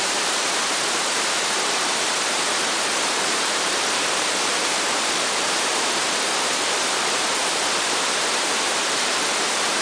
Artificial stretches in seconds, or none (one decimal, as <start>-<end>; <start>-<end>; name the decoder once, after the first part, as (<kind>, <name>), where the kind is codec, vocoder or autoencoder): 0.0-9.8 (vocoder, BigVGAN v2)